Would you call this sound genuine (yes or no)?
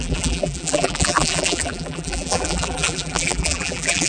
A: no